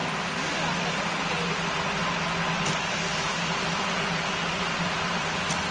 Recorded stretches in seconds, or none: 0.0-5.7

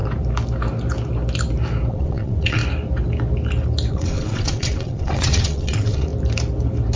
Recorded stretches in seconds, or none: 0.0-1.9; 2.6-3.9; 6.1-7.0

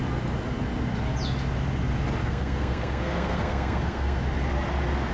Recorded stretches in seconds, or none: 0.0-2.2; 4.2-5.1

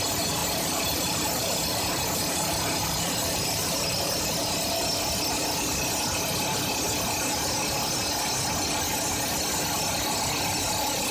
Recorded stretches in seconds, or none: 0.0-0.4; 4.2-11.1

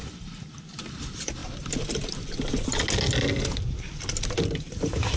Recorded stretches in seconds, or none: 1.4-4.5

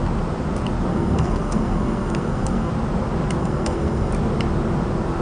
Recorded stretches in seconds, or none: 0.0-0.9; 2.7-3.4; 4.1-5.2